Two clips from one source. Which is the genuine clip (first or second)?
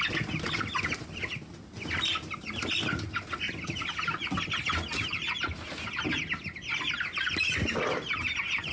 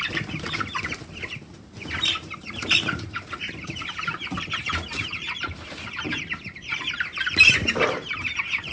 first